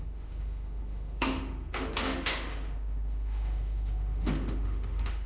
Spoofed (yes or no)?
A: yes